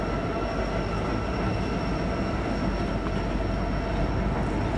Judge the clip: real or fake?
real